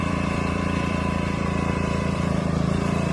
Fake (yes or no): yes